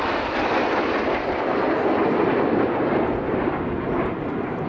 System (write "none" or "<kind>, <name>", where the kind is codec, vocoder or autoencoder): none